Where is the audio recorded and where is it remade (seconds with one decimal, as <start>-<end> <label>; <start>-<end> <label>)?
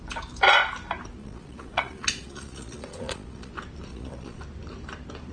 0.0-1.2 recorded; 1.2-3.5 remade; 3.5-3.9 recorded; 3.9-4.4 remade; 4.4-5.3 recorded